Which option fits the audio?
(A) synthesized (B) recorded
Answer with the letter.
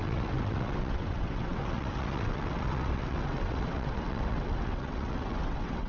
A